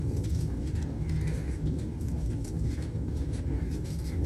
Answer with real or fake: fake